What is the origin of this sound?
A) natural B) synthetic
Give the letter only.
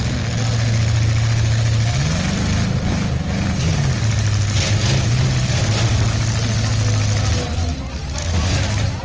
A